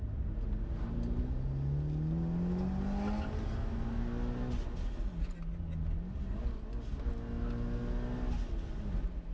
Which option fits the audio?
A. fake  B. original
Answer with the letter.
B